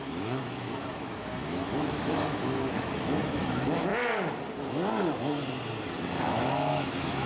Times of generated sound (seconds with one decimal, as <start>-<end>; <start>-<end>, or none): 0.0-3.9; 6.2-7.3